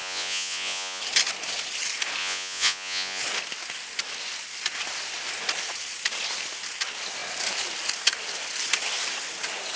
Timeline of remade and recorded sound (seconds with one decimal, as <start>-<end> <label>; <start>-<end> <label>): 0.0-1.0 remade; 1.0-2.2 recorded; 2.2-3.2 remade; 3.2-9.8 recorded